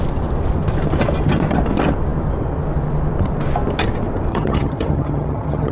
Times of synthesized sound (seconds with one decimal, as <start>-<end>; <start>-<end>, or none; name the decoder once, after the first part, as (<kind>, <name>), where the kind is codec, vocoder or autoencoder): 4.3-5.7 (vocoder, HiFi-GAN)